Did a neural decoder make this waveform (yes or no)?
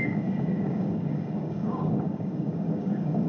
yes